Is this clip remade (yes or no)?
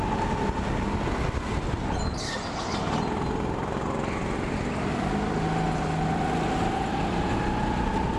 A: no